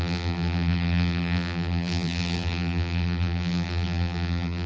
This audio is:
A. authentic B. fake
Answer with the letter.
B